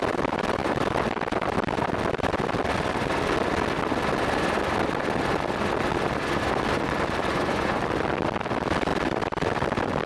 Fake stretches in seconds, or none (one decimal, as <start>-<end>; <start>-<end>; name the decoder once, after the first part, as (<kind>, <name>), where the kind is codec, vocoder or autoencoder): 7.3-7.8 (vocoder, Vocos)